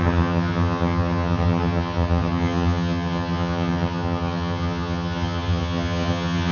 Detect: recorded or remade remade